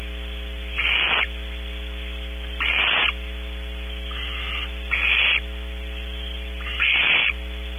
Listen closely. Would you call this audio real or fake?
real